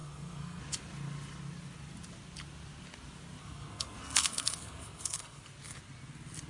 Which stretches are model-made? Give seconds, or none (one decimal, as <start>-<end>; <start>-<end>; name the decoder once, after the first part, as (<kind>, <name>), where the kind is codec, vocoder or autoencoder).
0.0-0.6 (codec, SNAC); 3.4-5.4